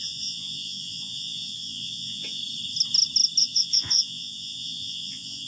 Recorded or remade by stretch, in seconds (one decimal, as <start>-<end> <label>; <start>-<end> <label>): 0.0-2.4 remade; 2.4-3.4 recorded; 3.4-5.5 remade